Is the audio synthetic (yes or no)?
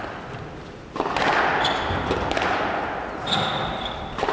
no